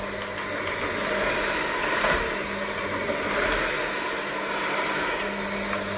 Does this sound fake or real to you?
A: real